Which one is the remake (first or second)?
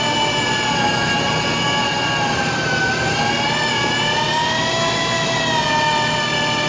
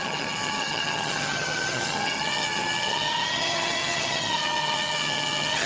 second